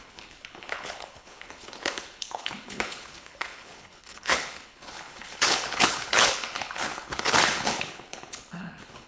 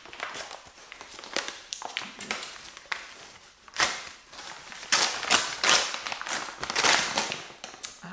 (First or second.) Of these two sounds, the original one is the second